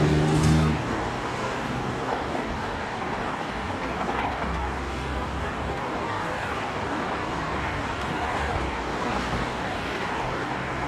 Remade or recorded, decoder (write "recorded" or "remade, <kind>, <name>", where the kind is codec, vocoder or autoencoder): remade, codec, DAC